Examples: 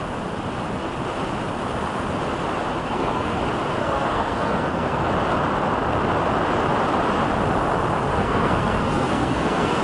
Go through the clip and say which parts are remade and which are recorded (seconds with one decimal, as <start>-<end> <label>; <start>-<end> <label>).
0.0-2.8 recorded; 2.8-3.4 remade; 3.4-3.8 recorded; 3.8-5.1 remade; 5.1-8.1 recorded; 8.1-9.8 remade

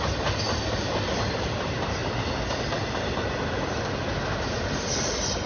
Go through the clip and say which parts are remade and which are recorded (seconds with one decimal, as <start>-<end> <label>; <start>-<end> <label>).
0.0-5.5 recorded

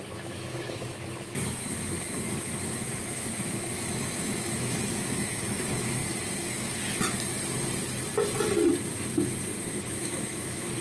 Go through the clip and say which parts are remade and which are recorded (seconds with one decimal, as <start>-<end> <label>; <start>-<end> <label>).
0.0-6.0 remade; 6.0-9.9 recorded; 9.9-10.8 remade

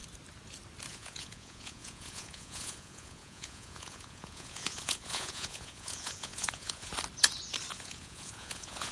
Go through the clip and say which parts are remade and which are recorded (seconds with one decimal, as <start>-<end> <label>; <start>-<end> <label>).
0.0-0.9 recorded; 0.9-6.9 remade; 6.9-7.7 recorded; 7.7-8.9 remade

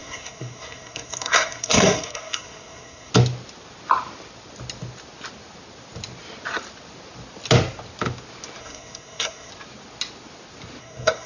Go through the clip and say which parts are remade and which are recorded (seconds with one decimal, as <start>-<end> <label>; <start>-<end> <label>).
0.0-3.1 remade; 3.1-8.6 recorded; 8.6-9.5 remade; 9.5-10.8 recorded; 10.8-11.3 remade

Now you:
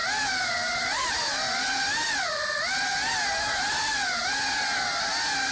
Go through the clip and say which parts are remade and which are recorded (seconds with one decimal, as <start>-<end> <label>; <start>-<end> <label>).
0.0-5.5 recorded

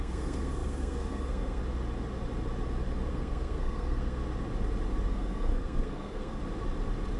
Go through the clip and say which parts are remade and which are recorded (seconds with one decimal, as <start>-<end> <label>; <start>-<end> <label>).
0.0-1.6 remade; 1.6-3.1 recorded; 3.1-4.2 remade; 4.2-5.1 recorded; 5.1-6.4 remade; 6.4-7.2 recorded

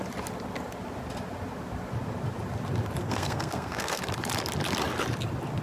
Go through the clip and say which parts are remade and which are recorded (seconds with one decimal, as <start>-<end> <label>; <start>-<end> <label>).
0.0-3.0 recorded; 3.0-4.0 remade; 4.0-5.6 recorded